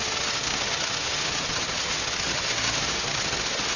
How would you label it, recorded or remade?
remade